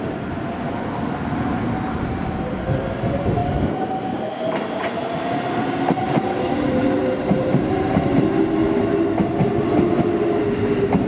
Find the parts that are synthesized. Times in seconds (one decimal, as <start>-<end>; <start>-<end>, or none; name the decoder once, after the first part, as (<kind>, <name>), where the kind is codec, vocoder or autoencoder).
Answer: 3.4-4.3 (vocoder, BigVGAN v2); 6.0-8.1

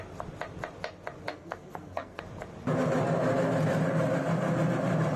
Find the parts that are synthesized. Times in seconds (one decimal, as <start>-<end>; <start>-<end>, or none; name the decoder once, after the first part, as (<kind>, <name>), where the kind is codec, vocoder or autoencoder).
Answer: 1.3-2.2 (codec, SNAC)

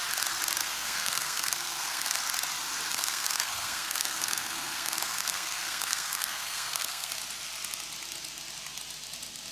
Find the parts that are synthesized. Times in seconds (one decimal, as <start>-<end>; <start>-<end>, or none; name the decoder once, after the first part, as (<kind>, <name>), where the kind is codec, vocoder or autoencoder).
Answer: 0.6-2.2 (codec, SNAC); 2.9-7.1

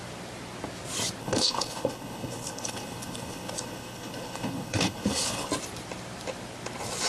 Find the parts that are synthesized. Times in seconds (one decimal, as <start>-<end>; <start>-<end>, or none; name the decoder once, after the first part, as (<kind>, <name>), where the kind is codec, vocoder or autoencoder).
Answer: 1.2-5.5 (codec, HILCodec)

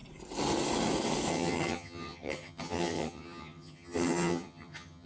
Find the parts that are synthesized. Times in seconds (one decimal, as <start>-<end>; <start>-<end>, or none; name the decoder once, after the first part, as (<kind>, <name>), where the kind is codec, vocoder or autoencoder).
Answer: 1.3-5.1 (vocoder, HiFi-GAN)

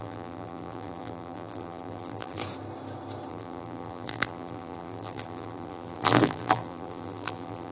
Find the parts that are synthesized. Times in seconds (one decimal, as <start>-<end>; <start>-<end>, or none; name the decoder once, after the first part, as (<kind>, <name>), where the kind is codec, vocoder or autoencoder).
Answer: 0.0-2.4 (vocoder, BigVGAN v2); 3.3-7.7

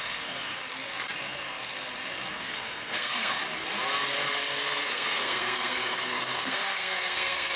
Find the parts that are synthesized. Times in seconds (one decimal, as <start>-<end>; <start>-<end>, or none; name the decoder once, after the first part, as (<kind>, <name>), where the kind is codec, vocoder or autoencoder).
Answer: 0.0-0.6 (codec, SNAC); 2.3-3.4; 4.6-7.6

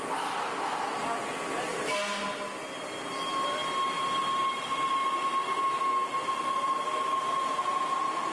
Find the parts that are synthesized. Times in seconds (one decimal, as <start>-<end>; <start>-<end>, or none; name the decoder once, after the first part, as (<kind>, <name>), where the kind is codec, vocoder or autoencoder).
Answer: none